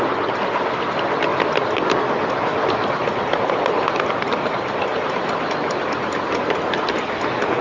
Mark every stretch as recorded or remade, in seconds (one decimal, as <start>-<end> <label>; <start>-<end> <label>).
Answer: 0.0-7.6 recorded